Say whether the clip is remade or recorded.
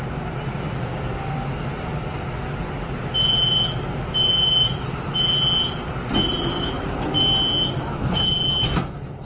recorded